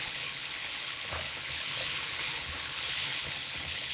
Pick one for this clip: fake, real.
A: fake